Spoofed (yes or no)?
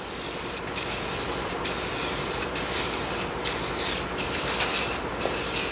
yes